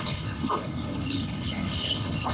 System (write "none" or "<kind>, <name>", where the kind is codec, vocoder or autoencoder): codec, HILCodec